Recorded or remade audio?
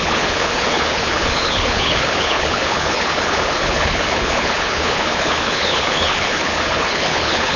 remade